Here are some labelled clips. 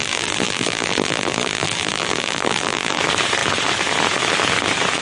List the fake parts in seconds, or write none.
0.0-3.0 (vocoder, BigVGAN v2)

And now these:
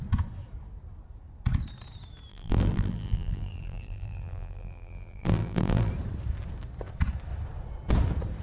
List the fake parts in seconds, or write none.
2.3-5.9 (vocoder, BigVGAN v2)

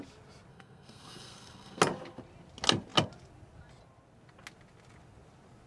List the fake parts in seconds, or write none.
0.5-1.8 (codec, SNAC)

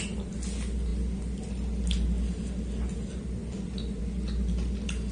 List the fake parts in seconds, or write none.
none